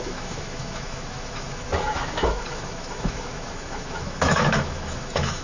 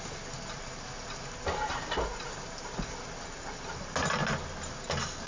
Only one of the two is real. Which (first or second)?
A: second